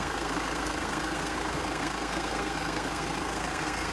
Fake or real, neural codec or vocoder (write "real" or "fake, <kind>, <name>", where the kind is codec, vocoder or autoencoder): fake, codec, SNAC